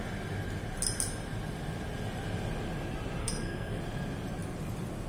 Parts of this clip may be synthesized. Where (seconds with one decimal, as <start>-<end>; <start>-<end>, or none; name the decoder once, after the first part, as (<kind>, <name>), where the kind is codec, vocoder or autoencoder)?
3.2-3.8 (codec, SNAC)